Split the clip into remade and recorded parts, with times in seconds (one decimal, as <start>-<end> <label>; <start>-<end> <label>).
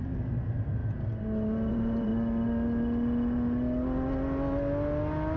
0.0-0.8 remade; 0.8-1.7 recorded; 1.7-2.1 remade; 2.1-5.4 recorded